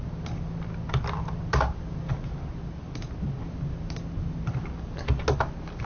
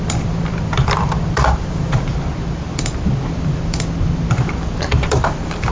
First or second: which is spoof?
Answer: second